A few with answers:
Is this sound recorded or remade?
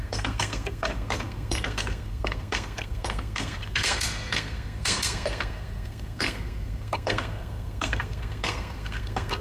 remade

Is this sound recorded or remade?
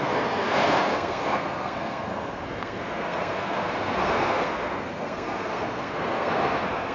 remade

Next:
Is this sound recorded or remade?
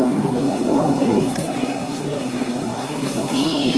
remade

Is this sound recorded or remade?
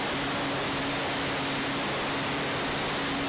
recorded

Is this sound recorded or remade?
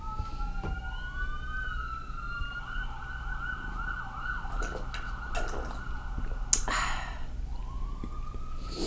recorded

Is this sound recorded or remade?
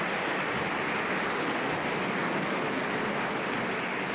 recorded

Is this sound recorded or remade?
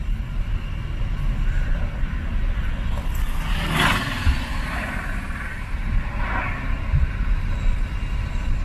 recorded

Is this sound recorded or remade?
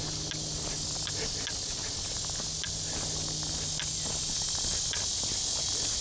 recorded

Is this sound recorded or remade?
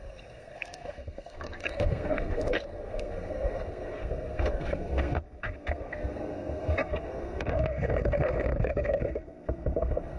remade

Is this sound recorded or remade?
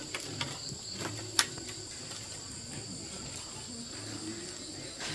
recorded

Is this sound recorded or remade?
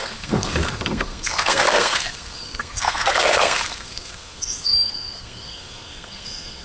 remade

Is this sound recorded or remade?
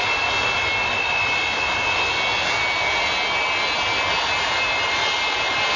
recorded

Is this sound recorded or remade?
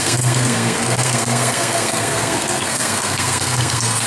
remade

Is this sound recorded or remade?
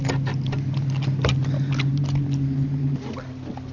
recorded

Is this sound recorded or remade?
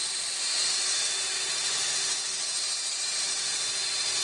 recorded